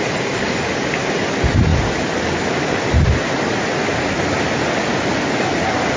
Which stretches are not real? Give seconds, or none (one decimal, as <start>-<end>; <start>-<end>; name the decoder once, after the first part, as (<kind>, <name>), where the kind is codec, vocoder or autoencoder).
none